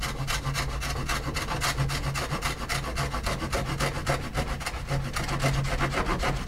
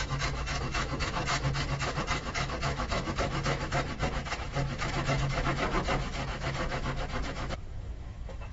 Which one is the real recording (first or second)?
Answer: first